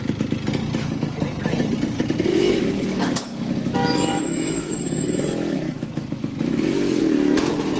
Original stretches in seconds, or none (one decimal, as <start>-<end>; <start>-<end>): 0.0-2.3; 7.0-7.8